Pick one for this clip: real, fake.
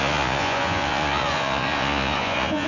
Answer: fake